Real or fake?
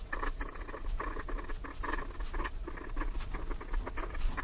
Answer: real